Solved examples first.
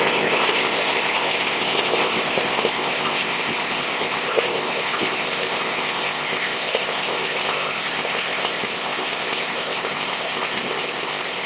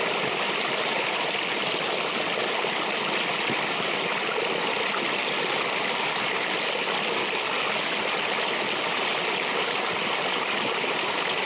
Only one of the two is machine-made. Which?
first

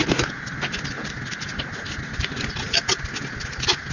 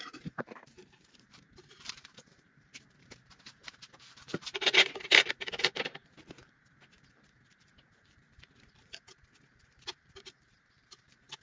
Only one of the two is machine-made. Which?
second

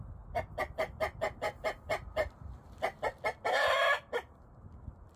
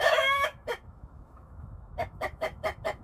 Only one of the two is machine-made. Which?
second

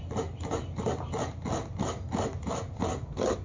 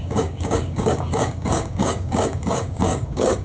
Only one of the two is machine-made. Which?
second